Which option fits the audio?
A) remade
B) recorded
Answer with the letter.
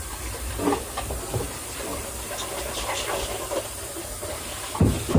A